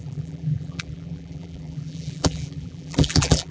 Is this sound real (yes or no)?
no